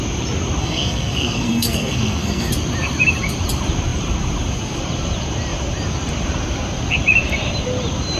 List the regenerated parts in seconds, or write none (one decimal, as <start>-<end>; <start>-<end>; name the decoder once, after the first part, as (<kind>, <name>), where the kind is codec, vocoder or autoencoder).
0.6-2.5 (codec, SNAC)